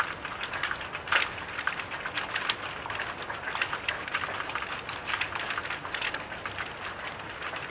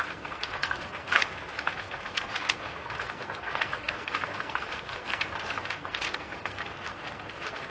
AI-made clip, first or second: second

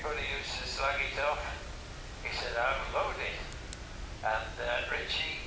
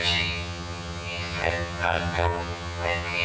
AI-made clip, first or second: second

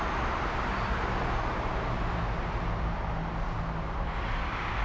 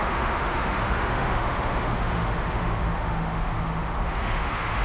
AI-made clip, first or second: second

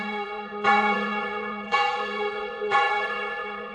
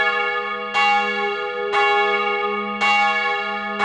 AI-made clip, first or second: first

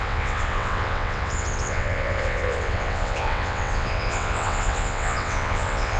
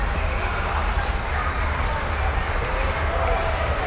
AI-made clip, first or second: first